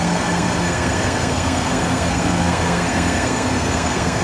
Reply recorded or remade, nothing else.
remade